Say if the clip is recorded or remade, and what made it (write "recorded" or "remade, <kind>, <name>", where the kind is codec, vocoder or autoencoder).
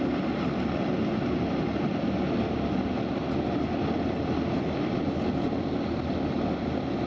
recorded